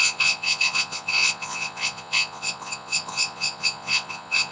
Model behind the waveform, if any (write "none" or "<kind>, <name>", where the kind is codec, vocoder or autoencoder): vocoder, Vocos